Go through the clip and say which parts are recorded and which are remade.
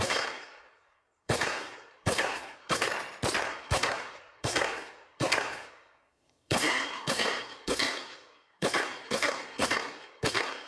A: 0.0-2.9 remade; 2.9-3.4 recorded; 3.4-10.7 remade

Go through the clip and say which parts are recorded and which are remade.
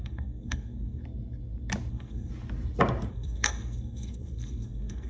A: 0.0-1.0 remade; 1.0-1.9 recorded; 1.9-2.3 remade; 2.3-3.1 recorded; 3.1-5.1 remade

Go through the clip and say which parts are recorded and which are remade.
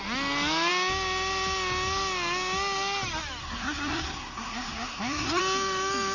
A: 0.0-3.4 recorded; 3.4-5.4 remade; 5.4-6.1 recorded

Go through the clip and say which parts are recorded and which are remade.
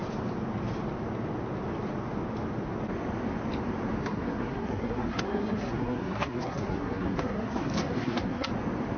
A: 0.0-4.0 recorded; 4.0-8.5 remade; 8.5-9.0 recorded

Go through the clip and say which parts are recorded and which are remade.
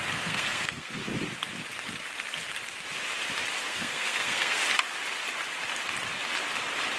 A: 0.0-1.0 remade; 1.0-3.7 recorded; 3.7-4.6 remade; 4.6-7.0 recorded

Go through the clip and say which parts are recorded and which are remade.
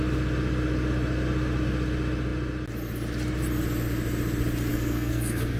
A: 0.0-4.7 recorded; 4.7-5.6 remade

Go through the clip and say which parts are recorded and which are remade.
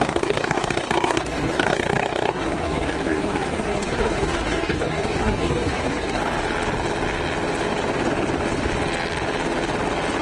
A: 0.0-6.2 remade; 6.2-10.2 recorded